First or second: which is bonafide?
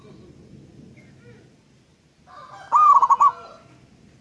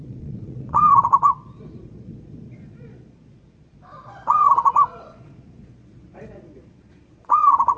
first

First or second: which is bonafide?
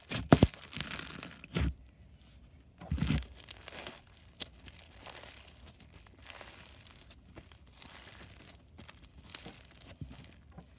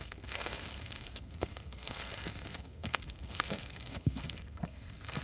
first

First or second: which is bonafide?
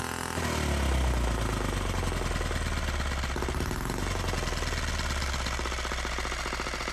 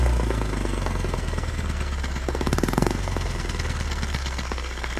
first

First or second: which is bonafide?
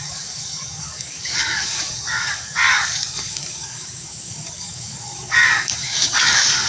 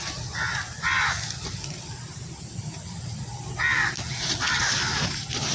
second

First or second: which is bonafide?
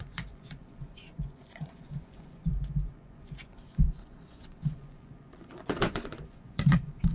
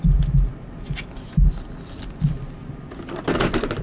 second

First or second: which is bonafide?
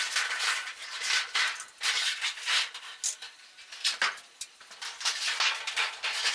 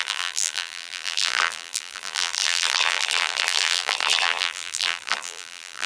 first